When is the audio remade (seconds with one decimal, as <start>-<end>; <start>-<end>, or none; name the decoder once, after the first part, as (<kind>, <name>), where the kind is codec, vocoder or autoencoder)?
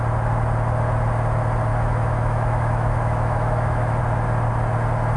1.7-4.0 (autoencoder, DAC-VAE)